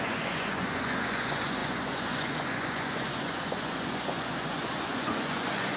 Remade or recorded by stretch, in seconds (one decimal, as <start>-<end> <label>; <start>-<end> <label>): 0.0-5.8 remade